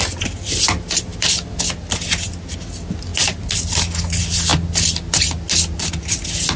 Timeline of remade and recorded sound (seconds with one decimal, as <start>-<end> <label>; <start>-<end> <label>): 0.0-1.1 recorded; 1.1-1.6 remade; 1.6-6.6 recorded